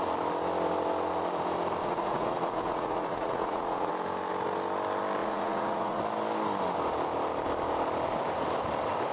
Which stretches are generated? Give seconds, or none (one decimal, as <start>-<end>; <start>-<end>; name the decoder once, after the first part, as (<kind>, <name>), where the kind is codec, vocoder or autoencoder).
1.8-3.9 (vocoder, Vocos); 5.2-6.0